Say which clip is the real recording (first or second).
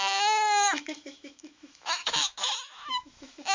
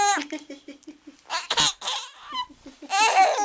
second